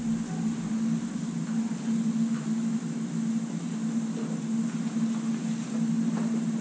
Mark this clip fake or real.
real